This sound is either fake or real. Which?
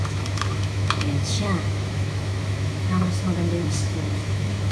fake